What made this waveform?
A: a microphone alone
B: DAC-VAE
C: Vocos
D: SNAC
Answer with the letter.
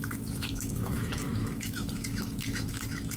B